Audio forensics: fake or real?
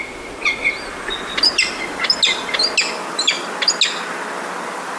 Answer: real